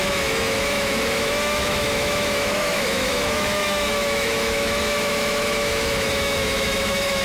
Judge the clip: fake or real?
fake